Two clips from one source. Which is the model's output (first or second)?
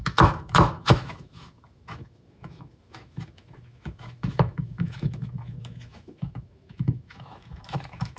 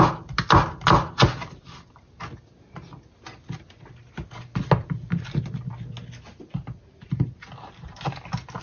first